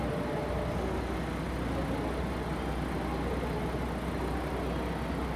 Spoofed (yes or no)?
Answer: no